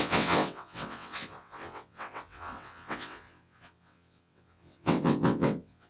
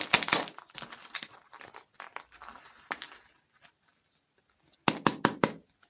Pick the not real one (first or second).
first